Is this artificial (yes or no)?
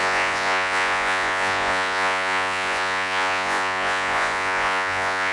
yes